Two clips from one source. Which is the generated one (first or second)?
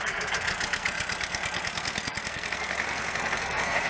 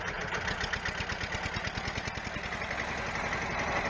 first